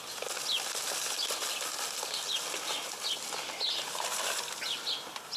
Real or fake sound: real